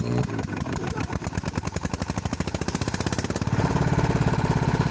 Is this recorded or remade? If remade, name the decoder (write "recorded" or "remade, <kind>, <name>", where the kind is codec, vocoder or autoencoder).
remade, vocoder, BigVGAN v2